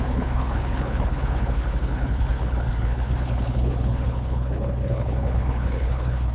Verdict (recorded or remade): remade